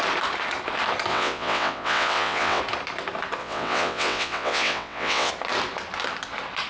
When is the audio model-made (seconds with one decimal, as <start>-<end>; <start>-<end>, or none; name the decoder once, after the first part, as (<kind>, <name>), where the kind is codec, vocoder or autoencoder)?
1.1-2.6 (vocoder, WaveNeXt); 3.4-5.3